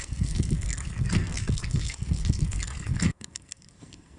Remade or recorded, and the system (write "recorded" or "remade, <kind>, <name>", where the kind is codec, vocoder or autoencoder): remade, codec, SNAC